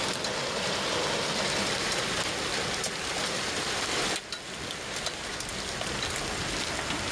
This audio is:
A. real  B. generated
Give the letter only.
A